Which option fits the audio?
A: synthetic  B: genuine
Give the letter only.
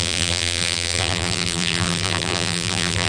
A